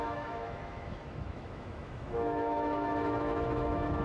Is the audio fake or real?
fake